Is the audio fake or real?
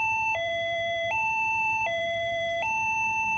fake